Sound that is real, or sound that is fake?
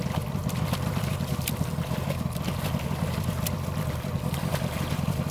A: fake